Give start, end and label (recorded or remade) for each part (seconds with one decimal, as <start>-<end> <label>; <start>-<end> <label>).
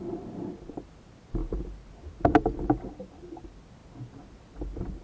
0.0-5.0 recorded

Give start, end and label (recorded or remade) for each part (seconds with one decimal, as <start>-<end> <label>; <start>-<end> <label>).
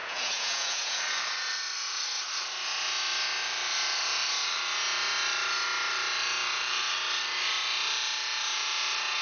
0.0-1.0 remade; 1.0-9.2 recorded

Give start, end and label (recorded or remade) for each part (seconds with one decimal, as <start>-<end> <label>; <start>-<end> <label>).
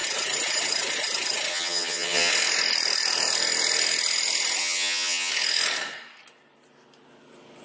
0.0-1.5 recorded; 1.5-2.3 remade; 2.3-4.6 recorded; 4.6-5.3 remade; 5.3-7.6 recorded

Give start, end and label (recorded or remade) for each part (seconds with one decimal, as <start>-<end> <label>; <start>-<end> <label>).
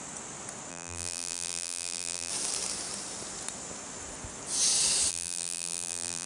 0.0-0.7 recorded; 0.7-2.3 remade; 2.3-5.1 recorded; 5.1-6.3 remade